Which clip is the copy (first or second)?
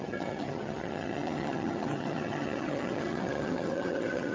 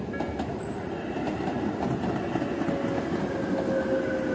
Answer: first